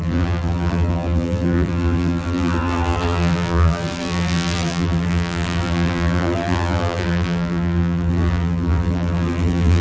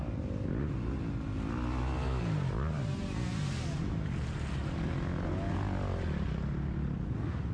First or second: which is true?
second